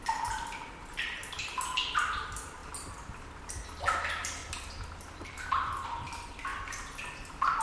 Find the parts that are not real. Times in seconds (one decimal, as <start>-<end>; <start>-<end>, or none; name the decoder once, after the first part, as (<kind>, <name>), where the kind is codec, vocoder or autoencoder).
4.4-5.4 (vocoder, BigVGAN v2)